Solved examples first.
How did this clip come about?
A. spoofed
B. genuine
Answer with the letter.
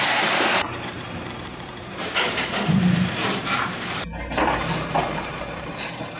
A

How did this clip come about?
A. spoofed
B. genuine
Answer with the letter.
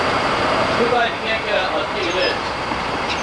A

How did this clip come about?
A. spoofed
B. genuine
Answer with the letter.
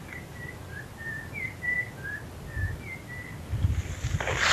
B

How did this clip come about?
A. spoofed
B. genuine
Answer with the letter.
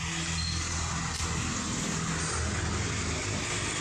B